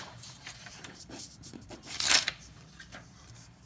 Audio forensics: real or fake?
fake